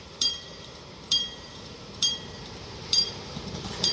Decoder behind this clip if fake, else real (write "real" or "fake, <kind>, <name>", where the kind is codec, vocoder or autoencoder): fake, vocoder, BigVGAN v2